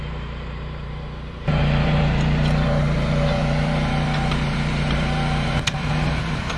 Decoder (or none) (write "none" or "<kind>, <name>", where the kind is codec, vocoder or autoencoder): vocoder, BigVGAN v2